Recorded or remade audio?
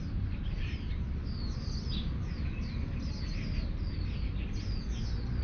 recorded